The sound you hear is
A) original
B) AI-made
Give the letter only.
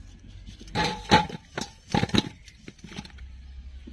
A